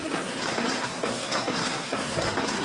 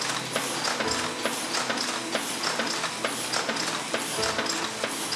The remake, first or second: first